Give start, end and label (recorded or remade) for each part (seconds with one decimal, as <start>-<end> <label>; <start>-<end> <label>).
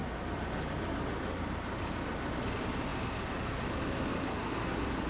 0.0-5.1 recorded